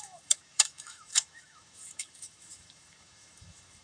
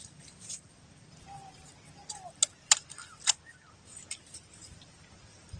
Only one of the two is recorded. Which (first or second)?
second